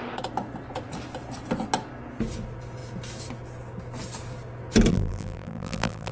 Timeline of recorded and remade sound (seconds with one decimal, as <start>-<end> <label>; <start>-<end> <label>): 0.0-4.9 recorded; 4.9-6.1 remade